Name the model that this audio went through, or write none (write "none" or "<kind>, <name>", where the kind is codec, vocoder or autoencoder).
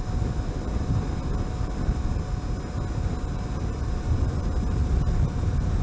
none